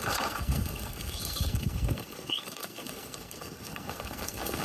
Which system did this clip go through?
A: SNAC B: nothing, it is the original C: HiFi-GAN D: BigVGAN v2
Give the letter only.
A